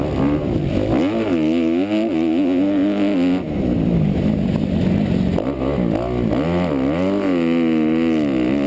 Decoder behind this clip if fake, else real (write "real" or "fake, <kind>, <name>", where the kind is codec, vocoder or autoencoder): real